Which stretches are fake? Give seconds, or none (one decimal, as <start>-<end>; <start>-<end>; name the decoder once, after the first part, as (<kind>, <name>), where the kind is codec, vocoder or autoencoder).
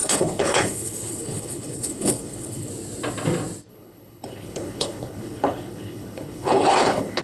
0.0-2.7 (codec, HILCodec); 3.7-7.2